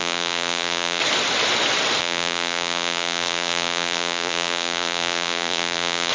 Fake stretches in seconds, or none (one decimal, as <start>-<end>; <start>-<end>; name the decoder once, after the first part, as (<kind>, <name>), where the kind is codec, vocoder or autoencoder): 0.0-1.0 (vocoder, BigVGAN v2); 2.0-6.1